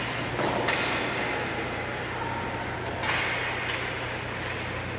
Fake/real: real